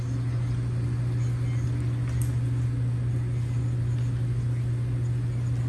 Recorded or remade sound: recorded